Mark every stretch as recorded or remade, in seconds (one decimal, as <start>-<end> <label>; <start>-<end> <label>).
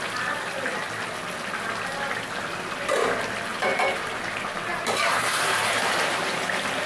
0.0-3.5 recorded; 3.5-4.2 remade; 4.2-4.7 recorded; 4.7-6.4 remade; 6.4-6.9 recorded